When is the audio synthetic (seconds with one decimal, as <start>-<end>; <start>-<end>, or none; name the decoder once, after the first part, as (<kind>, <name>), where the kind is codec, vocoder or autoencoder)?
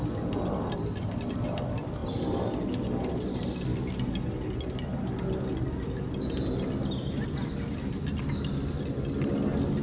none